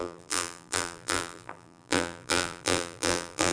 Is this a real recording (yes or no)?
no